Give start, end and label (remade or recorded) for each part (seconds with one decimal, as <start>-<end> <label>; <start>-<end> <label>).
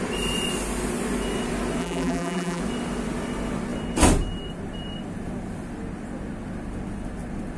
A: 0.0-1.8 recorded; 1.8-2.6 remade; 2.6-7.6 recorded